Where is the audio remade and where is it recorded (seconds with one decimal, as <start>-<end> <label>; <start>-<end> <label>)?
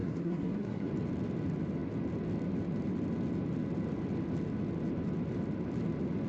0.0-0.9 remade; 0.9-6.3 recorded